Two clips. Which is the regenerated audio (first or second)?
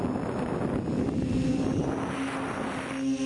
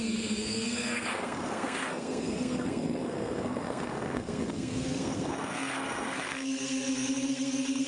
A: second